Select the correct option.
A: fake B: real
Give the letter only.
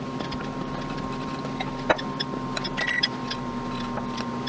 B